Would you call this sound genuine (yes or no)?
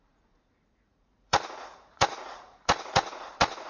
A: no